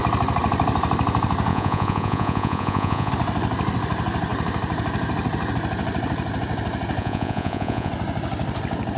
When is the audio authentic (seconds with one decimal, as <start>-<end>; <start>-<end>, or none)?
0.0-1.5; 3.1-7.0; 7.9-9.0